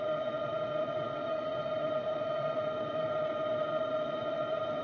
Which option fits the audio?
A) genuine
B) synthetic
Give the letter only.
B